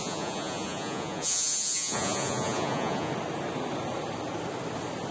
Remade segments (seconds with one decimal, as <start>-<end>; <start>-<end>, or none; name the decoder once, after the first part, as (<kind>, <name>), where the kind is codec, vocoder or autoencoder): 0.0-3.1 (vocoder, Vocos)